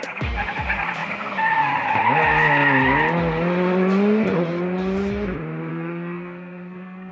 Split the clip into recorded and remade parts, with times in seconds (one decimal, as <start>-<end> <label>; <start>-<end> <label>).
0.0-5.7 recorded; 5.7-7.1 remade